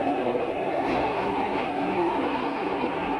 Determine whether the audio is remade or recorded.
remade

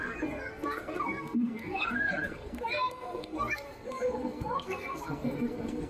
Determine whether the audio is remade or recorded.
remade